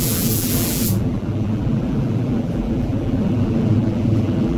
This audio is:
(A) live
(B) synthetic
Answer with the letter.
B